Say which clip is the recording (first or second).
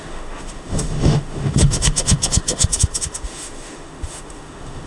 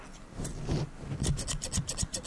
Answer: second